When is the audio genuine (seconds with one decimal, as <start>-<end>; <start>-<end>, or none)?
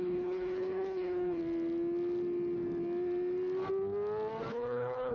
1.4-4.5